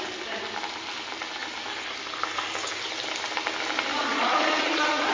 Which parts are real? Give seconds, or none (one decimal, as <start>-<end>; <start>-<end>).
0.0-3.9